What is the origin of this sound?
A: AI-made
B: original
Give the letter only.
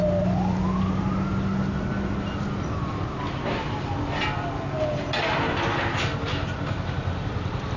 B